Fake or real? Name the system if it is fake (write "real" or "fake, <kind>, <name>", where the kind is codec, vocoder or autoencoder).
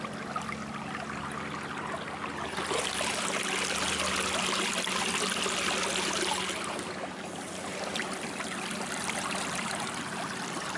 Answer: real